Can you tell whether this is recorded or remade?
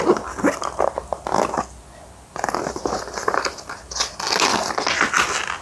recorded